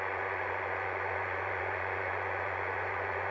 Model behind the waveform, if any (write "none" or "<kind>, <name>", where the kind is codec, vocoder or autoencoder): vocoder, Vocos